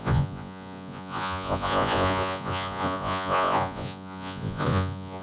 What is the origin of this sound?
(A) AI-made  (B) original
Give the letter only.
A